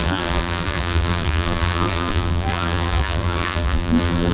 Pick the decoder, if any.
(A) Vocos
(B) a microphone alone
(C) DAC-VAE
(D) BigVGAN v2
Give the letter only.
D